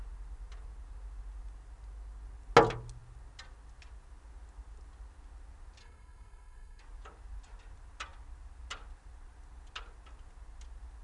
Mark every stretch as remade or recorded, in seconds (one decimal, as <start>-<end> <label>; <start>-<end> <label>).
0.0-5.8 recorded; 5.8-6.8 remade; 6.8-11.0 recorded